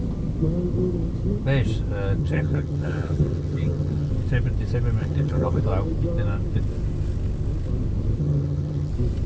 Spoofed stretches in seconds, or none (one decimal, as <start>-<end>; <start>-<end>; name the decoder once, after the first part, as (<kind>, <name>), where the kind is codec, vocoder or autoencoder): 2.2-4.1 (vocoder, HiFi-GAN); 5.0-5.6; 8.2-8.9